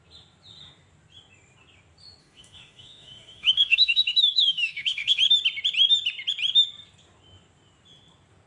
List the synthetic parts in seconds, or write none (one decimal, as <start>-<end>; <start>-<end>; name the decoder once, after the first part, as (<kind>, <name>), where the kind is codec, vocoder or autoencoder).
2.2-5.2 (autoencoder, DAC-VAE)